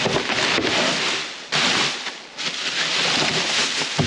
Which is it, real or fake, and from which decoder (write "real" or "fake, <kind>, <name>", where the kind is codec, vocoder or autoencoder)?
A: real